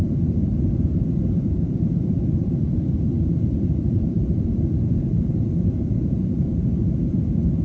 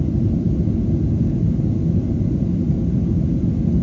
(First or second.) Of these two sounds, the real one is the second